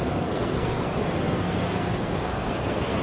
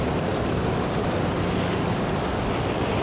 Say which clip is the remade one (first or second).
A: first